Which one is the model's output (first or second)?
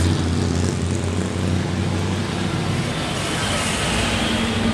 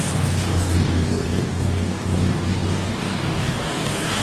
second